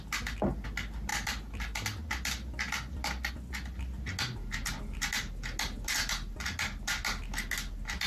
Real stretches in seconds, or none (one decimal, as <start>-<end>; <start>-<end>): 0.0-8.1